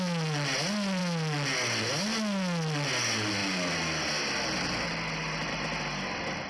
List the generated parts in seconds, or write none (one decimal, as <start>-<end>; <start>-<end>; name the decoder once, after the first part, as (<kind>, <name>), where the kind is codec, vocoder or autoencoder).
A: none